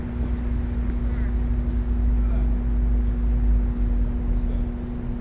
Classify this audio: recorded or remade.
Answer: recorded